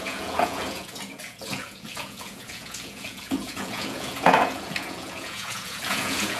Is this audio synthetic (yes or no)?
yes